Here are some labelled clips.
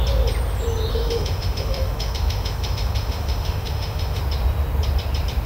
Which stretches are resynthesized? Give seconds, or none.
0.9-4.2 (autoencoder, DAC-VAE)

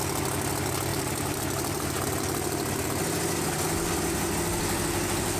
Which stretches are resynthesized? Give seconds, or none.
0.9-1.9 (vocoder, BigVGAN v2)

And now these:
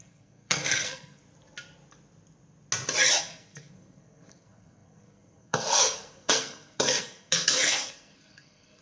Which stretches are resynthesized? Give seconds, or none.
0.0-1.2 (codec, SNAC); 3.2-8.8

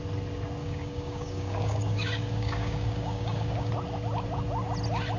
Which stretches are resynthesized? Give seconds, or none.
0.6-3.7 (codec, DAC)

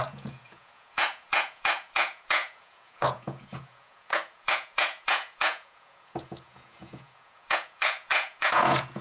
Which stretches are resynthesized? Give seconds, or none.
0.0-9.0 (vocoder, Vocos)

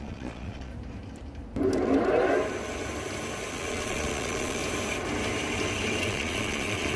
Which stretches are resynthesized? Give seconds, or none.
0.0-0.7 (vocoder, Vocos); 3.5-4.6; 6.0-7.0

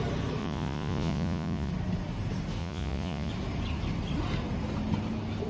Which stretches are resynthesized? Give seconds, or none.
0.4-1.7 (vocoder, Vocos); 2.6-3.3

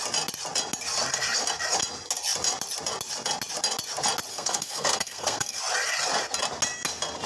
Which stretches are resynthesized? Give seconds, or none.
4.3-5.6 (codec, SNAC)